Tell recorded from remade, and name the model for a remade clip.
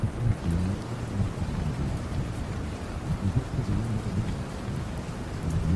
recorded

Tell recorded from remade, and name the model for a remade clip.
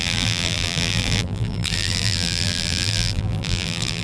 remade, vocoder, BigVGAN v2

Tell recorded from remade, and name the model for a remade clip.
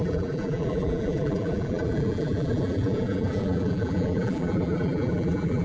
remade, vocoder, BigVGAN v2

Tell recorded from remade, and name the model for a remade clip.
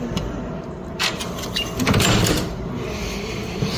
remade, vocoder, BigVGAN v2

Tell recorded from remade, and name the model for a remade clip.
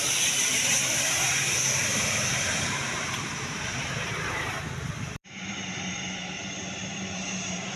remade, vocoder, BigVGAN v2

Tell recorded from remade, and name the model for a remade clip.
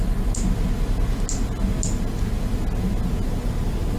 recorded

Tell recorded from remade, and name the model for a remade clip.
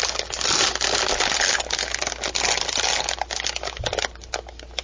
recorded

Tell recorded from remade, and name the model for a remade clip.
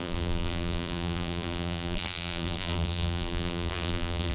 remade, vocoder, BigVGAN v2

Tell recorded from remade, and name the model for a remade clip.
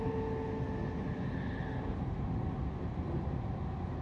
recorded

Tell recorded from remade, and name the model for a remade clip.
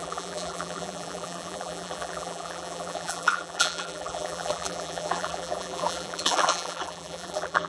remade, vocoder, BigVGAN v2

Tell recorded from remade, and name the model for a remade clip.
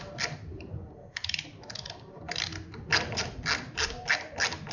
recorded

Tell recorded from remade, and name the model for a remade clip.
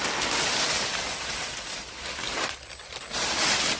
recorded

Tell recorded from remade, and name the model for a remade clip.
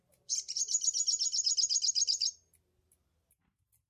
recorded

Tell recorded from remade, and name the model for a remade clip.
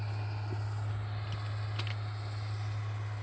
recorded